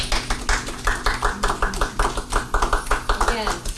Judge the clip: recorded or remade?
recorded